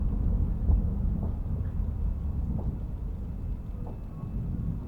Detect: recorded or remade recorded